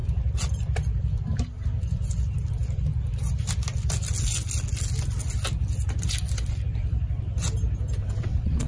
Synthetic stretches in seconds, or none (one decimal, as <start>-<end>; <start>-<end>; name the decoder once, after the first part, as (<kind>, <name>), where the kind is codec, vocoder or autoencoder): 8.0-8.7 (vocoder, WaveNeXt)